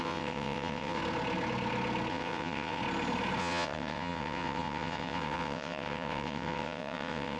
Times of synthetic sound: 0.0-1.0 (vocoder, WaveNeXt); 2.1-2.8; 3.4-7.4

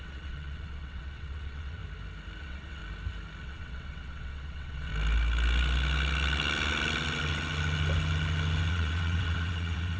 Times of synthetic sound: 0.0-1.8 (vocoder, WaveNeXt); 2.4-2.8; 3.4-4.9; 8.7-10.0

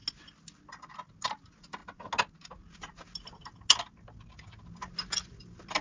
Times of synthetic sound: none

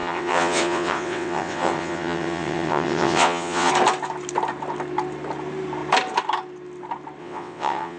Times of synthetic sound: 0.0-3.7 (vocoder, WaveNeXt); 7.2-8.0

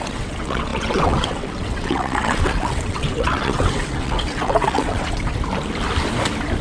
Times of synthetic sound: 0.0-5.3 (vocoder, WaveNeXt)